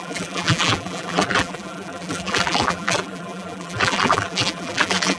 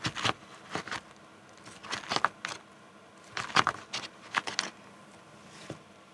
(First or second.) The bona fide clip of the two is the second